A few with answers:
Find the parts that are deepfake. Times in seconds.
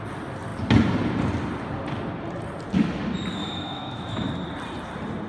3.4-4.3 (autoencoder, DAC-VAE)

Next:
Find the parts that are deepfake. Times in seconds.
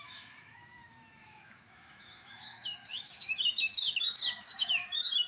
0.0-5.3 (autoencoder, DAC-VAE)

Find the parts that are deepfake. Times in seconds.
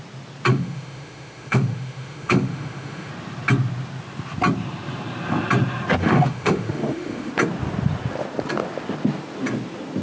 0.5-3.1 (autoencoder, DAC-VAE); 6.0-7.3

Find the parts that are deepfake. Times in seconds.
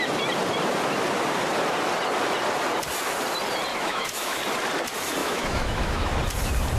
3.7-4.4 (autoencoder, DAC-VAE); 5.2-6.1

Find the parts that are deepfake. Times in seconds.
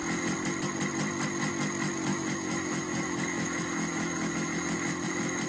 2.1-5.5 (autoencoder, DAC-VAE)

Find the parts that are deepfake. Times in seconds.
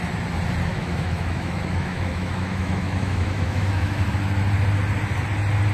0.7-4.1 (autoencoder, DAC-VAE)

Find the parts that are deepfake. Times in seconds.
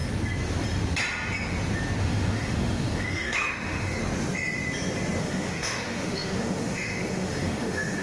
2.0-4.0 (autoencoder, DAC-VAE); 5.2-8.0